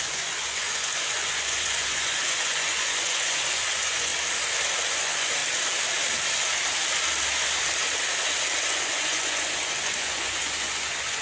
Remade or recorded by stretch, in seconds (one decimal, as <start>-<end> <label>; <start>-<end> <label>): 0.0-4.1 remade; 4.1-4.9 recorded; 4.9-5.4 remade; 5.4-8.6 recorded; 8.6-11.2 remade